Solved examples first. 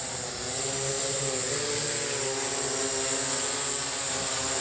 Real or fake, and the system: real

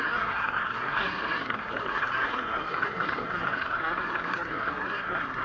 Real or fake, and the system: fake, codec, SNAC